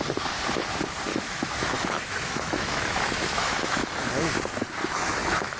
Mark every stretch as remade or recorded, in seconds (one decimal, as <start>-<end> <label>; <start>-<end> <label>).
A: 0.0-1.1 recorded; 1.1-4.1 remade; 4.1-4.8 recorded; 4.8-5.6 remade